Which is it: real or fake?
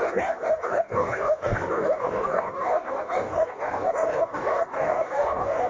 fake